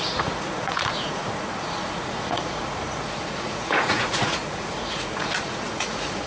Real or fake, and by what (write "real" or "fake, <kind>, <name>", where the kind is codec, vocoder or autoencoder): fake, vocoder, Vocos